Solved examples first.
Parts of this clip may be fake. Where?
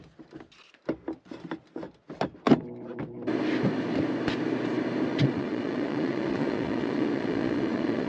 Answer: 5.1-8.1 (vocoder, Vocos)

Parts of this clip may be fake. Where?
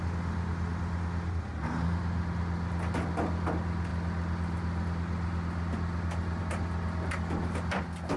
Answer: none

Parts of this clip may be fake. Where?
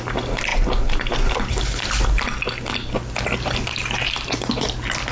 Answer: none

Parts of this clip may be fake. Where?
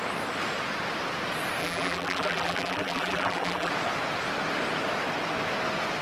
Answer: 1.6-3.7 (vocoder, BigVGAN v2)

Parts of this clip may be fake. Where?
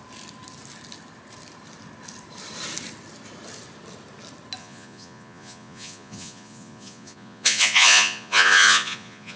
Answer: 4.6-9.4 (vocoder, Vocos)